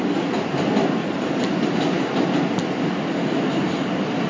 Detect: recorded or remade recorded